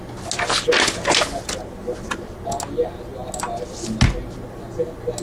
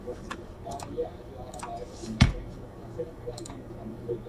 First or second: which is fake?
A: second